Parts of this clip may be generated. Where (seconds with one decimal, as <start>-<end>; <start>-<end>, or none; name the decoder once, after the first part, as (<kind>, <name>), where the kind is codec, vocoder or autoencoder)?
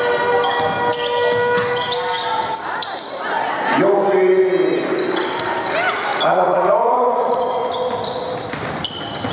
6.1-7.4 (vocoder, Vocos)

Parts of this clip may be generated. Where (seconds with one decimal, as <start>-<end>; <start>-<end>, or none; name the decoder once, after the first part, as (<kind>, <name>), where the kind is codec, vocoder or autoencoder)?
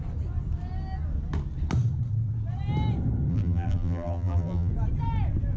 3.3-4.7 (vocoder, BigVGAN v2)